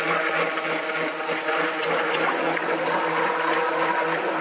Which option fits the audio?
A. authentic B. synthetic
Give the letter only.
A